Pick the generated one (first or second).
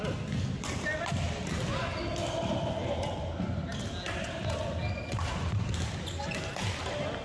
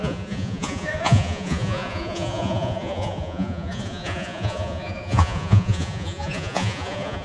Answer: second